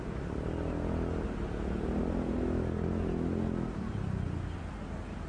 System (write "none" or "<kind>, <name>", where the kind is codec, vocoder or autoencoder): none